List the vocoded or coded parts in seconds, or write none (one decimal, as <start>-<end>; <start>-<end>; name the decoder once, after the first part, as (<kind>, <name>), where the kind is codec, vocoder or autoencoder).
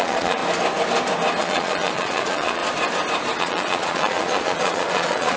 0.0-0.4 (vocoder, Vocos); 1.4-2.6; 3.4-5.4